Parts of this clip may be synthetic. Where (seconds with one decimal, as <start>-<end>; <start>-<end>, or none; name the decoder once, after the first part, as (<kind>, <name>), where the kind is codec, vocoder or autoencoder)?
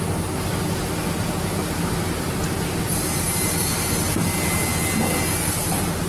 none